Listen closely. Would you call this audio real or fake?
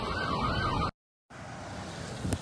real